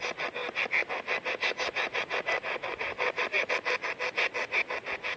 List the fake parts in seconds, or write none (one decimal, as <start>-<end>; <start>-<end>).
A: 0.4-3.5